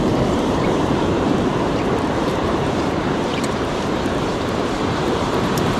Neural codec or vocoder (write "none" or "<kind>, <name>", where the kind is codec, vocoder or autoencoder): vocoder, BigVGAN v2